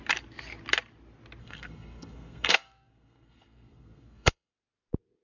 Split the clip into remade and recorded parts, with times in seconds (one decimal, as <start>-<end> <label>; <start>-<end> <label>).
0.0-1.4 recorded; 1.4-4.5 remade; 4.5-5.2 recorded